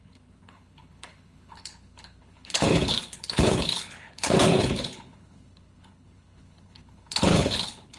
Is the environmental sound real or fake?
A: fake